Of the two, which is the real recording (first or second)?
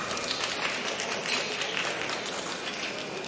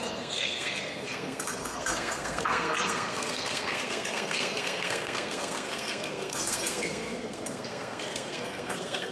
first